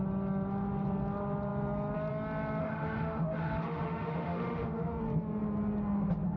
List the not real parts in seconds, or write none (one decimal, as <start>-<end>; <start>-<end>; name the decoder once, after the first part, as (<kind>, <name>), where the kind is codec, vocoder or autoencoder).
2.6-5.0 (autoencoder, DAC-VAE)

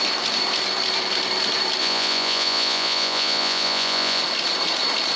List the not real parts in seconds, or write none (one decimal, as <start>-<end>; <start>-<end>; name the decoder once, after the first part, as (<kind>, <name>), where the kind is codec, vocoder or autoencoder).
1.8-4.2 (vocoder, Vocos)

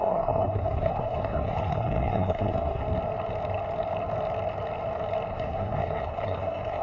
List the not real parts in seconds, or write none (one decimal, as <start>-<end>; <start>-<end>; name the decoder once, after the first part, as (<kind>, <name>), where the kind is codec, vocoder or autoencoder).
0.0-2.8 (codec, SNAC); 5.3-6.8

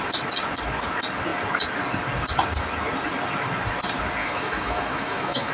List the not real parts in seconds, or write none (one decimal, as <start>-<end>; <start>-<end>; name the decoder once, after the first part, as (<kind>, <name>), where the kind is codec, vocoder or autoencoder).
4.2-5.5 (autoencoder, DAC-VAE)

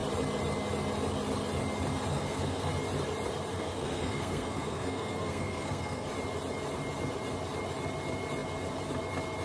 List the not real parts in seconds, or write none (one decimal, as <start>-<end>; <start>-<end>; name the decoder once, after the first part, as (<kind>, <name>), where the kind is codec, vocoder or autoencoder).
2.1-2.7 (codec, SNAC); 3.5-6.1

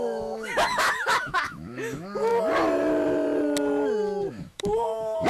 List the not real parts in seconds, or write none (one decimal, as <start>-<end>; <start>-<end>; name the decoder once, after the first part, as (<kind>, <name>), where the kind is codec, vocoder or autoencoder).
0.0-2.3 (autoencoder, DAC-VAE); 4.3-5.3